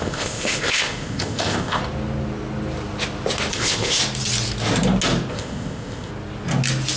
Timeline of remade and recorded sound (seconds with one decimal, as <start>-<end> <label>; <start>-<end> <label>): 0.0-1.8 remade; 1.8-3.5 recorded; 3.5-4.0 remade; 4.0-5.3 recorded; 5.3-6.1 remade; 6.1-7.0 recorded